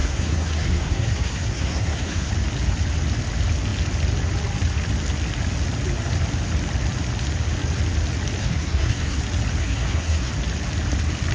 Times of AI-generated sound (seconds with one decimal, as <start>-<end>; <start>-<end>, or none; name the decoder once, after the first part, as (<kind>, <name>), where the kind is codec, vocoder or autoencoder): 0.0-2.3 (codec, SNAC); 8.4-9.2; 9.6-10.3